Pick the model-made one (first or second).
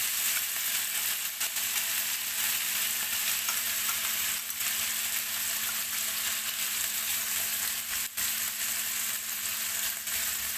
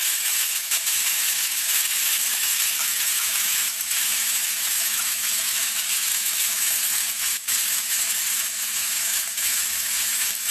second